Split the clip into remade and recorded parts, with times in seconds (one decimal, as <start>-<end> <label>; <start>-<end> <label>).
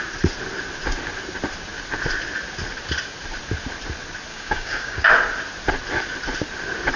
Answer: 0.0-4.3 recorded; 4.3-5.1 remade; 5.1-7.0 recorded